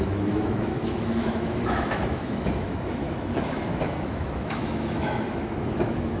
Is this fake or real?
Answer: fake